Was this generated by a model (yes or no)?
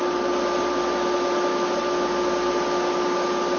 no